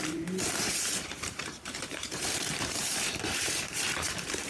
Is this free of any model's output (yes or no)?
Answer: no